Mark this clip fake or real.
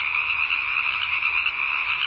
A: real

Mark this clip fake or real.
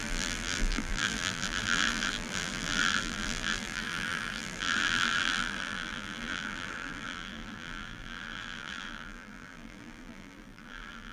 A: fake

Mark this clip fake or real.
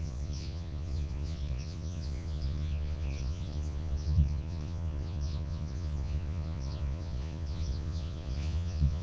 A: fake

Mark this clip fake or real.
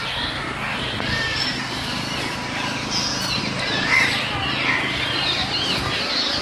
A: real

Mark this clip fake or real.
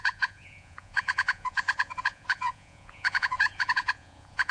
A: fake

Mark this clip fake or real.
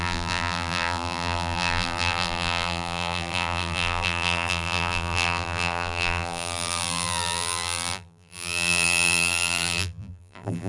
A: fake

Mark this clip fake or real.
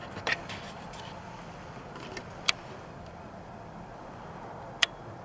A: fake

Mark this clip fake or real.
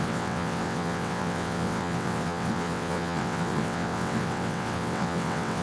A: fake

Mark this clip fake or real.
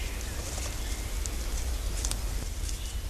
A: real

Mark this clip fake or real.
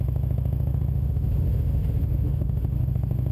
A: fake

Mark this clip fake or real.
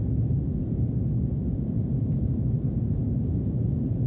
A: fake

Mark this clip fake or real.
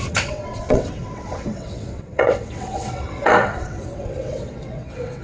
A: fake